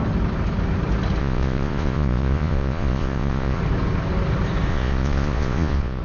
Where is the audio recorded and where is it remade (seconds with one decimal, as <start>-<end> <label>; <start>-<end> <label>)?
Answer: 0.0-1.2 recorded; 1.2-3.6 remade; 3.6-4.7 recorded; 4.7-6.0 remade

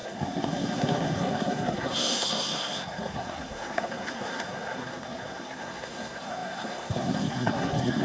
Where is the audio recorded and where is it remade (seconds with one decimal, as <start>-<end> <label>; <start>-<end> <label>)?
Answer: 0.0-8.0 remade

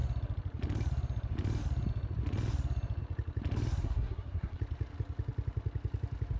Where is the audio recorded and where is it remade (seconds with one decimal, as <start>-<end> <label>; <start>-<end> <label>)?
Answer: 0.0-3.8 recorded; 3.8-4.6 remade; 4.6-6.4 recorded

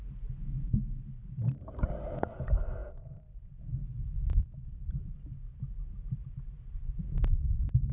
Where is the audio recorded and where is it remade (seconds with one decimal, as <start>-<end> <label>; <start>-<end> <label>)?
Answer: 0.0-2.8 recorded; 2.8-3.6 remade; 3.6-5.5 recorded; 5.5-7.0 remade; 7.0-7.9 recorded

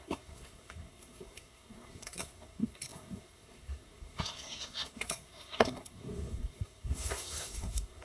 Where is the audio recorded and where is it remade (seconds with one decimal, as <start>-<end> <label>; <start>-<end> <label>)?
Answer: 0.0-8.0 remade

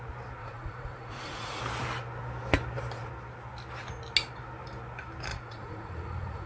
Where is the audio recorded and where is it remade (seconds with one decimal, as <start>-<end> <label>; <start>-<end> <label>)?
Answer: 0.0-0.4 recorded; 0.4-1.6 remade; 1.6-5.3 recorded; 5.3-6.5 remade

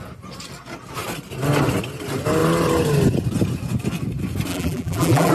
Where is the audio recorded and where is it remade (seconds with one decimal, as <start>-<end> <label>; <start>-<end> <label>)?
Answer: 0.0-4.5 recorded; 4.5-5.3 remade

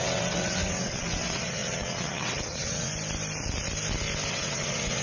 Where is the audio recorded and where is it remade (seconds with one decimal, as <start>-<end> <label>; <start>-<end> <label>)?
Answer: 0.0-2.9 remade; 2.9-4.3 recorded; 4.3-5.0 remade